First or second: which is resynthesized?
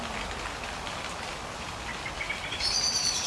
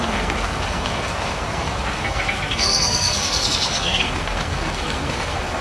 second